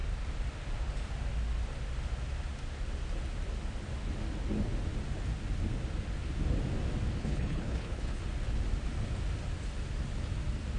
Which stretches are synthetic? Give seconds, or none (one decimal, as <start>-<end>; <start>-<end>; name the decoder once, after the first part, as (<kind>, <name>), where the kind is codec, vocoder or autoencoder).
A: 7.2-8.2 (codec, HILCodec)